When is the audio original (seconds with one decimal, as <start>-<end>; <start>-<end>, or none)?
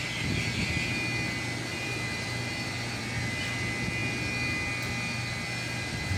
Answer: 0.0-1.7; 3.0-6.2